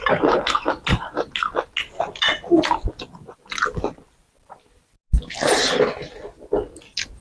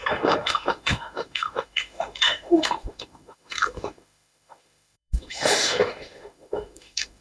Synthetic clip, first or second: second